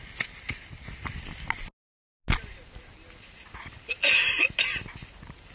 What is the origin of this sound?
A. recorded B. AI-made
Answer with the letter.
A